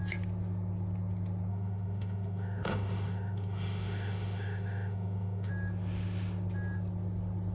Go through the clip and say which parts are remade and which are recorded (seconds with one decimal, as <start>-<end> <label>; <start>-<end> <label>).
0.0-1.5 recorded; 1.5-5.5 remade; 5.5-7.5 recorded